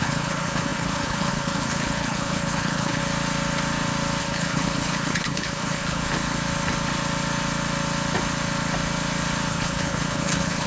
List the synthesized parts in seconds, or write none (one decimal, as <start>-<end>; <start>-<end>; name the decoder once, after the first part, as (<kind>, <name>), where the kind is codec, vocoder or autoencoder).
0.0-3.0 (codec, HILCodec); 4.2-6.0; 9.5-10.7